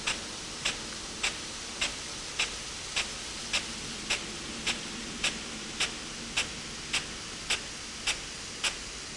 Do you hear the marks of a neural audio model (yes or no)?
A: no